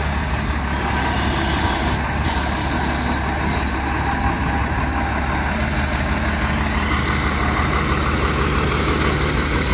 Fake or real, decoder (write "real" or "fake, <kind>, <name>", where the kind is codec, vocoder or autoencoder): real